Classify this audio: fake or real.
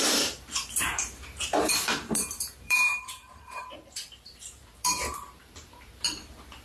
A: fake